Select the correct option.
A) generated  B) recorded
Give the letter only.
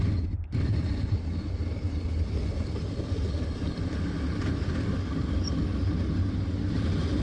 B